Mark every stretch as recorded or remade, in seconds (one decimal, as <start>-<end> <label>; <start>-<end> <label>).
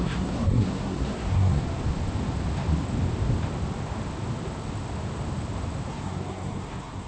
0.0-1.6 remade; 1.6-5.9 recorded; 5.9-7.1 remade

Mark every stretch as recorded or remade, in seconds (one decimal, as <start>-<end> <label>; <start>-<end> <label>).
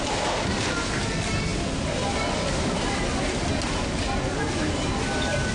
0.0-5.5 recorded